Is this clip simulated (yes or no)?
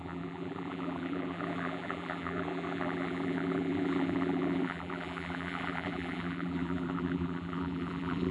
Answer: yes